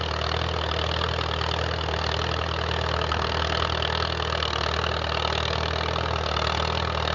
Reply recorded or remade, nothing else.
recorded